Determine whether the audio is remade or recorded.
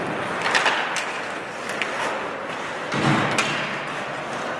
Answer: recorded